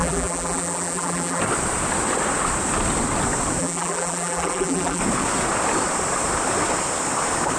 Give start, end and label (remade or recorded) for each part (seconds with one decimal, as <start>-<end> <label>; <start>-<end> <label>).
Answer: 0.0-1.4 remade; 1.4-3.6 recorded; 3.6-5.0 remade; 5.0-7.6 recorded